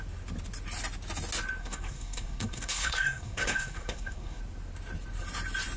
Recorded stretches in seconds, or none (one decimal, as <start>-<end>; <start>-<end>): 0.0-1.6; 4.4-5.8